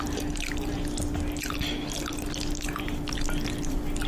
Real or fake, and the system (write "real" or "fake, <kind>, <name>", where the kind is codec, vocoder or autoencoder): real